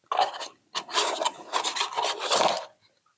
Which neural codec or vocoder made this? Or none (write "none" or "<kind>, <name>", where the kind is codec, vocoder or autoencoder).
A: none